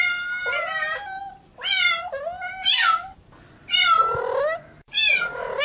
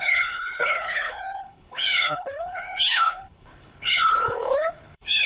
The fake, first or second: second